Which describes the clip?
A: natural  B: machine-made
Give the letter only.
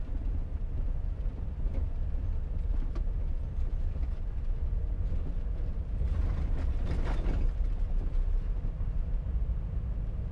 A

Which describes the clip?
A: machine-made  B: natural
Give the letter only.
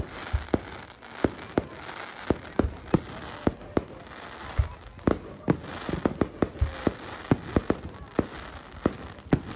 B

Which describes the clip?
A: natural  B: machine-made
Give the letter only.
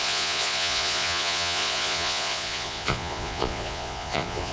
B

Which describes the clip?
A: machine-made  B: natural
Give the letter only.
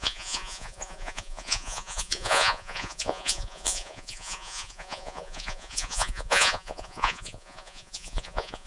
A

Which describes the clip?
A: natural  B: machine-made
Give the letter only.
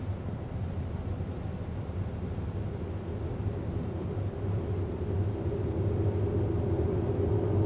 A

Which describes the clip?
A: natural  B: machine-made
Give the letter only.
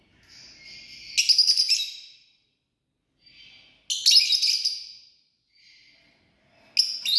A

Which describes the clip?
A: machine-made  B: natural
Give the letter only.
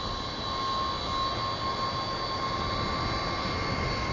B